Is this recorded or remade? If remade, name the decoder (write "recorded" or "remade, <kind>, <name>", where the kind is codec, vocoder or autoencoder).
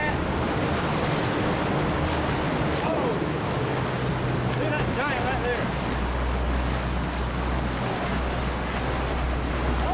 recorded